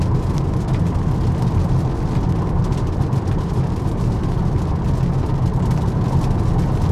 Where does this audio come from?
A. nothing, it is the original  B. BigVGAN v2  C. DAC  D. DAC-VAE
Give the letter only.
A